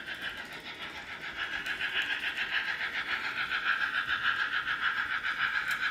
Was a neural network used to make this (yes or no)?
no